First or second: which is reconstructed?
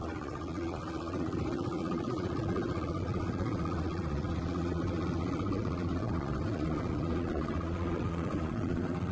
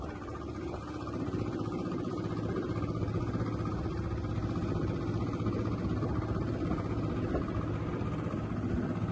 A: first